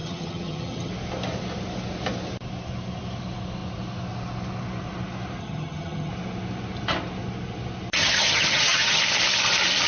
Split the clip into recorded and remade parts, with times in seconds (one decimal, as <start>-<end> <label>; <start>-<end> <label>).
0.0-0.9 remade; 0.9-5.4 recorded; 5.4-6.1 remade; 6.1-8.0 recorded; 8.0-9.0 remade; 9.0-9.9 recorded